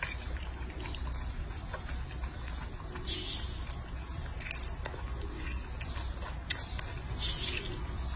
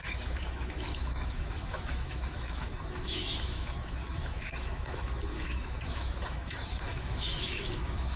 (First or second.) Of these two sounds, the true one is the first